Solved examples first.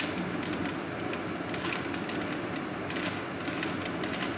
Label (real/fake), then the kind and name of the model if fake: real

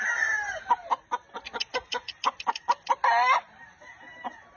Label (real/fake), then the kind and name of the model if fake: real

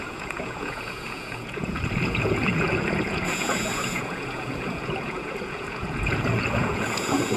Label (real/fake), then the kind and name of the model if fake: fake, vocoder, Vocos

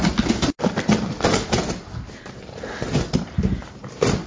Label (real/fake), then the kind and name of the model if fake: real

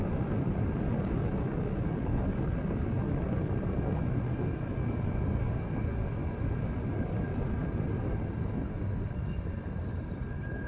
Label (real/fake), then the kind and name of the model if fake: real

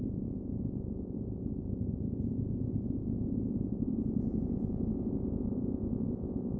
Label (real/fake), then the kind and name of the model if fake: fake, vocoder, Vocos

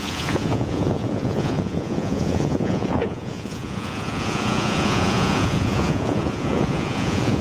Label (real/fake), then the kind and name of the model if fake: fake, vocoder, Vocos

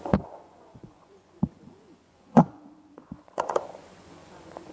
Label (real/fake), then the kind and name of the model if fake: fake, vocoder, Vocos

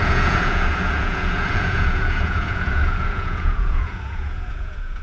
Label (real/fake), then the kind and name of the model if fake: fake, vocoder, Vocos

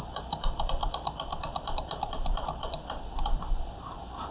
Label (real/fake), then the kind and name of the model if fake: real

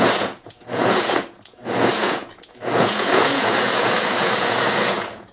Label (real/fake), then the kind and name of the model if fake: fake, vocoder, Vocos